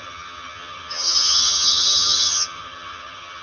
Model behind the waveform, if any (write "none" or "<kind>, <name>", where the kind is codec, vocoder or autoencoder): vocoder, HiFi-GAN